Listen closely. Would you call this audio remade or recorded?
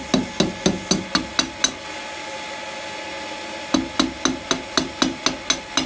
recorded